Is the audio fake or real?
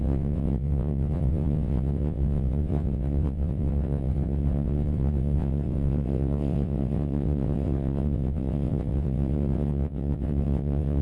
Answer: fake